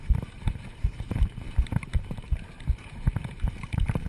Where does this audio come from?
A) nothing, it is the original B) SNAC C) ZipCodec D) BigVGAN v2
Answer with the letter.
D